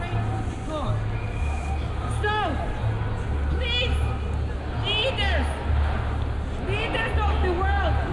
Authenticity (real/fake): real